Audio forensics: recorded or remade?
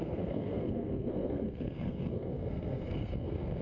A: remade